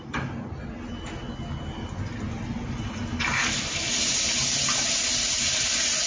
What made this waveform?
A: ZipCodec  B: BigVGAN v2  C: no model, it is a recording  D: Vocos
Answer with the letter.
C